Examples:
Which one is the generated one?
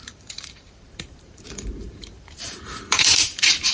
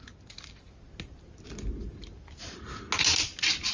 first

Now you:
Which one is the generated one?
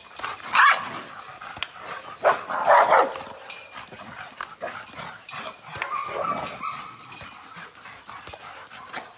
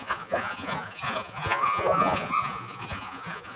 second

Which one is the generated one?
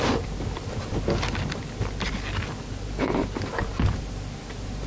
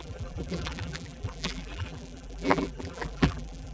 second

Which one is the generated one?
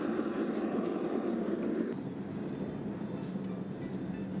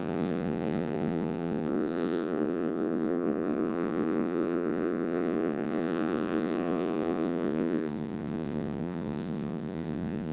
second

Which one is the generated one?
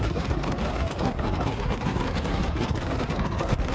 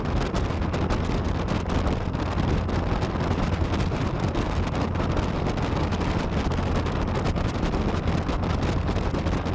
first